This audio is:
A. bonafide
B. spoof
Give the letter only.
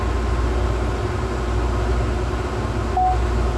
A